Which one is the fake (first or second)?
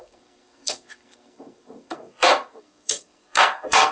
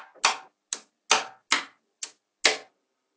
first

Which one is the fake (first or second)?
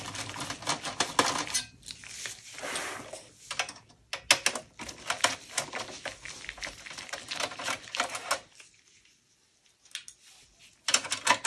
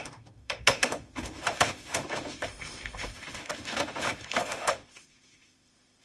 second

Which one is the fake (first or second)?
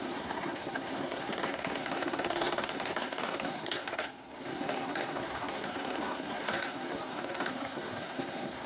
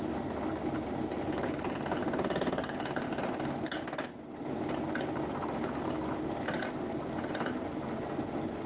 first